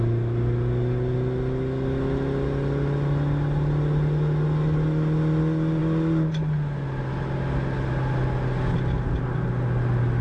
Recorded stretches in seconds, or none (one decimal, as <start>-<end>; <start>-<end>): 0.0-10.2